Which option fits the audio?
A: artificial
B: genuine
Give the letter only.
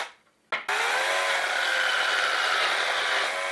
B